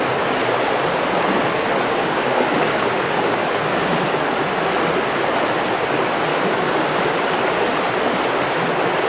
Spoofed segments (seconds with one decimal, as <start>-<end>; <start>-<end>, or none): 2.0-4.0; 6.3-7.0